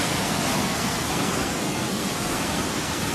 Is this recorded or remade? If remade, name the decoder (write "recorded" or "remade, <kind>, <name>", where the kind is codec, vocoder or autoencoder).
remade, codec, SNAC